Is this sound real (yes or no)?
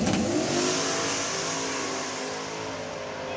yes